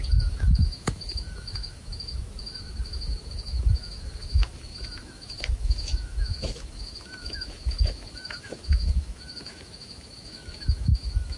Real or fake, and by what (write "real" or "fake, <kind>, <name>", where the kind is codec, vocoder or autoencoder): fake, autoencoder, DAC-VAE